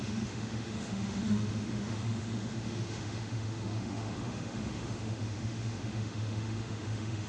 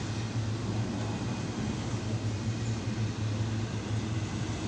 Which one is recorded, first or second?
second